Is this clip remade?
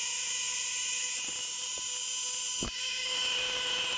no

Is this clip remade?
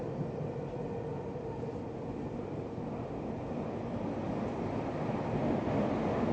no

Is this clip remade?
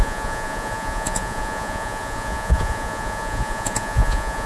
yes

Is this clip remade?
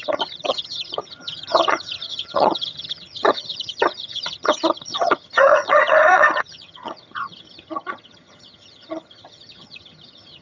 yes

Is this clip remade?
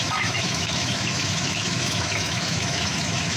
yes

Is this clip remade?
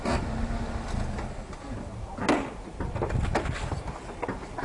no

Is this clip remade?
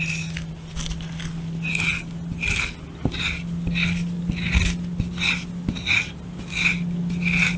no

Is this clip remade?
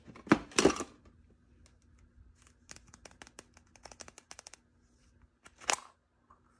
no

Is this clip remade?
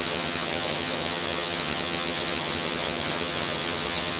yes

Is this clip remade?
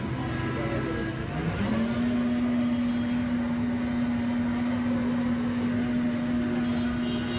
no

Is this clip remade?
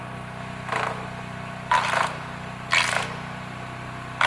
no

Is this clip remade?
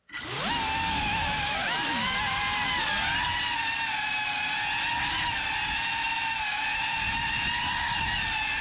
no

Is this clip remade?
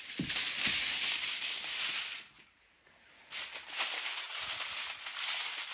no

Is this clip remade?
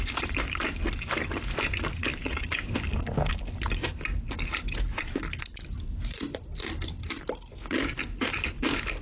no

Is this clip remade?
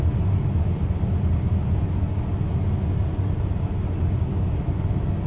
no